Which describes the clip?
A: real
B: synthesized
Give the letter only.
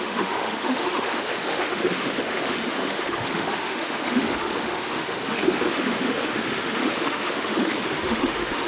B